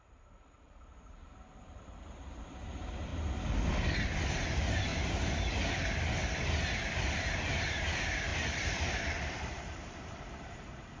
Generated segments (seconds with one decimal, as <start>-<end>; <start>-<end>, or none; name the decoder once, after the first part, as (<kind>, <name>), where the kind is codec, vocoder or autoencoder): 0.0-3.1 (vocoder, BigVGAN v2); 4.3-4.9; 7.6-8.3; 9.5-11.0